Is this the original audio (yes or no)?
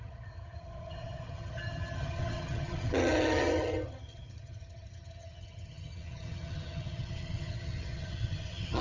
no